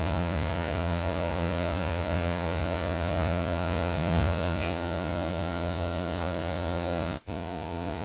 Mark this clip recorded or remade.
remade